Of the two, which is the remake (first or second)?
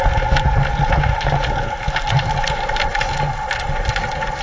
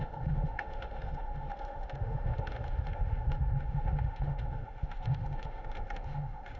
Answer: second